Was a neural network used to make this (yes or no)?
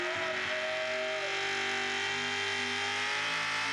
no